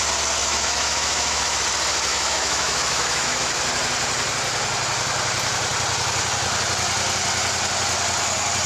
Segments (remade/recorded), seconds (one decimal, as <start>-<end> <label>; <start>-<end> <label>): 0.0-0.4 recorded; 0.4-1.6 remade; 1.6-2.1 recorded; 2.1-3.6 remade; 3.6-8.7 recorded